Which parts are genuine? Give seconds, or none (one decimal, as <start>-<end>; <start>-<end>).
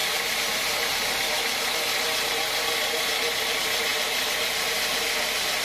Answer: 0.0-5.6